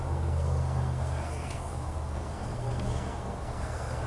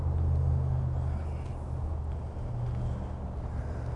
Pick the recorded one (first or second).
second